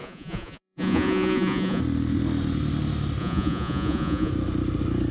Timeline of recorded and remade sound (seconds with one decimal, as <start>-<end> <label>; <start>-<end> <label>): 0.0-1.8 remade; 1.8-3.2 recorded; 3.2-4.3 remade; 4.3-5.1 recorded